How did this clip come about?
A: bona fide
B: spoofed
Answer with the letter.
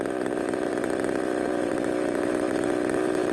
B